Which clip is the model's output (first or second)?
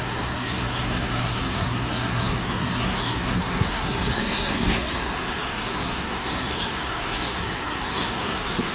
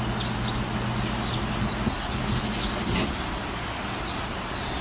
first